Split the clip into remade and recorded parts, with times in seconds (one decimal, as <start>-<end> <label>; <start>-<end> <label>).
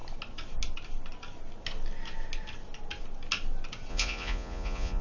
0.0-3.9 recorded; 3.9-5.0 remade